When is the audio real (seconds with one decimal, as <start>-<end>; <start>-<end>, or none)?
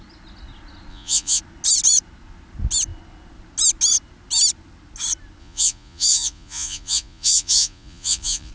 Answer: 0.0-0.9; 1.4-5.4